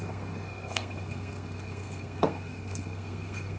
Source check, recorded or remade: remade